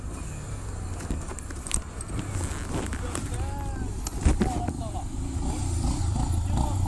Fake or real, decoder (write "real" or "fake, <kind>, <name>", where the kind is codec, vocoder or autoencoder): real